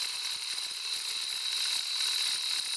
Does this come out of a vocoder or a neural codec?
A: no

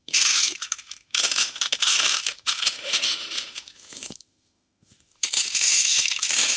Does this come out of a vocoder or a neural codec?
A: yes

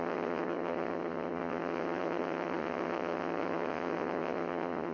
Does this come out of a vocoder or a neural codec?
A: yes